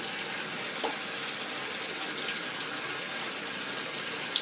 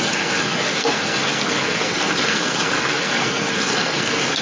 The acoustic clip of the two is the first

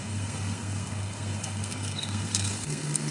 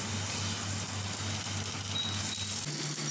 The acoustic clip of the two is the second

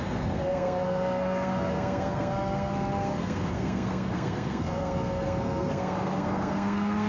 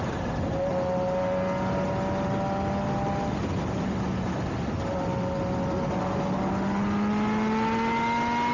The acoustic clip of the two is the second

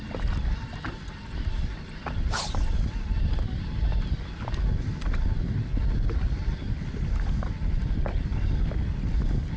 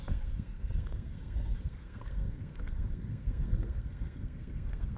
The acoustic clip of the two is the first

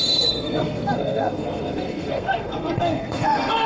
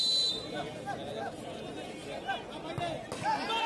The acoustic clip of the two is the second